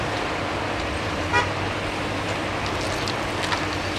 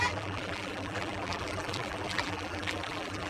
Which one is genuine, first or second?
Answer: first